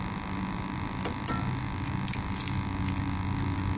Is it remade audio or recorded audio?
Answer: recorded